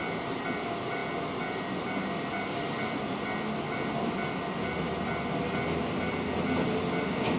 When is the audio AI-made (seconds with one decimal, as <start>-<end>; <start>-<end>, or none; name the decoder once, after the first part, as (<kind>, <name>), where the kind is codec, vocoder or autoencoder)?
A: none